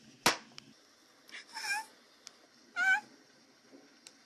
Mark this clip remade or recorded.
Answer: recorded